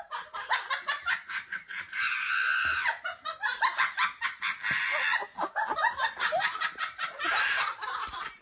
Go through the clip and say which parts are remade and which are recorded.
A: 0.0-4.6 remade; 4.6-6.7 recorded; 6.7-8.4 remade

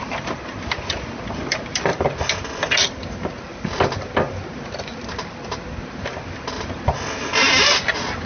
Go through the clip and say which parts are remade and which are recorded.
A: 0.0-8.3 remade